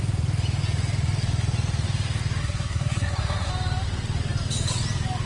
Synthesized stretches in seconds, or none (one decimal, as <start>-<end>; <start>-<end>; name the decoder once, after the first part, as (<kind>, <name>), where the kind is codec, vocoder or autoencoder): 2.4-3.5 (codec, SNAC)